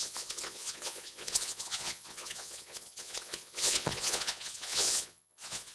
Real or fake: fake